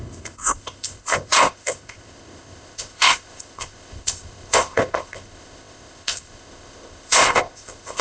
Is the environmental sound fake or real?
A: fake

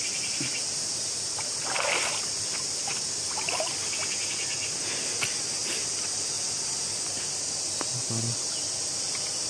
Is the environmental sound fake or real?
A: real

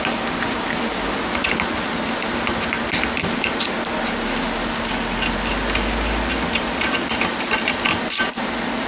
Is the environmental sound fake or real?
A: real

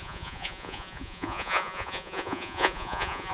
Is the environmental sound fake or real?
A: fake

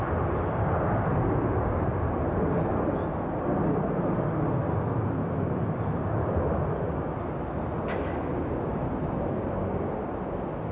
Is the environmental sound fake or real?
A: real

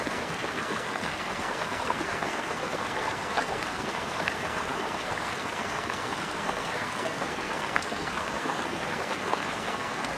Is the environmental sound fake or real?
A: fake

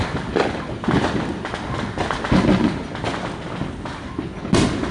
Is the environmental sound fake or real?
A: real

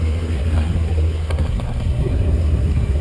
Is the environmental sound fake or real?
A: fake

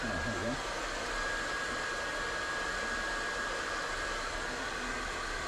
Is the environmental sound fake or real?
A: real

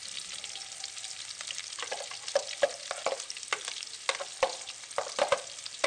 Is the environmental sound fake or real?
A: real